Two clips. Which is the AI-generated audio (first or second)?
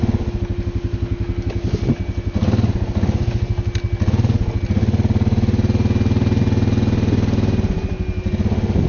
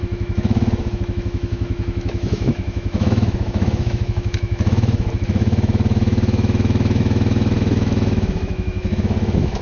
second